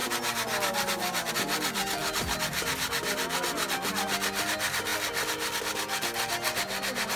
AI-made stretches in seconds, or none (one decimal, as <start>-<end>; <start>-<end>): none